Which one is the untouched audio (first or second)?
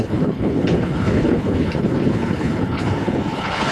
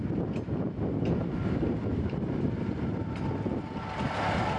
second